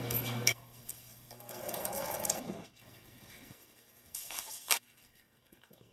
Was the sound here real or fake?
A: fake